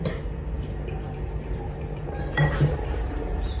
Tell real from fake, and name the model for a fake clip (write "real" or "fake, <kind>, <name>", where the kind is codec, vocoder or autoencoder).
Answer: fake, vocoder, BigVGAN v2